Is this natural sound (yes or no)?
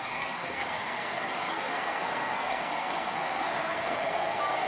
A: no